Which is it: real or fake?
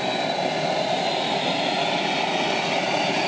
real